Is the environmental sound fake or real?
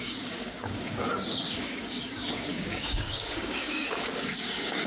fake